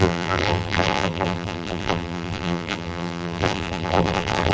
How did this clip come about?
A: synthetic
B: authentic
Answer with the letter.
A